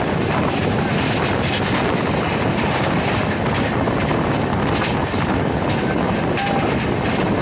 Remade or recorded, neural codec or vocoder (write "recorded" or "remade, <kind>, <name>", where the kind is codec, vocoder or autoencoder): recorded